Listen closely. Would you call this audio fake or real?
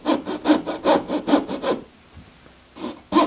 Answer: real